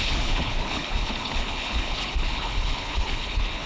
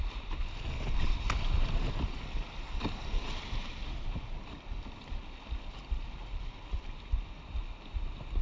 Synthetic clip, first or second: first